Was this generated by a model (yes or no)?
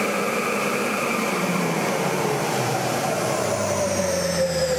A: yes